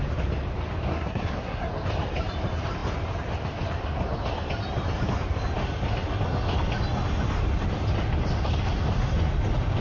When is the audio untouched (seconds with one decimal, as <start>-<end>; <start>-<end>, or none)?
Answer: 0.0-0.9; 1.7-9.8